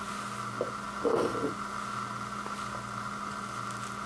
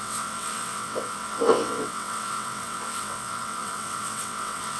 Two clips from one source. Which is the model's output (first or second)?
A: second